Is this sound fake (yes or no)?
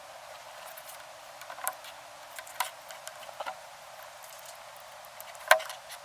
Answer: no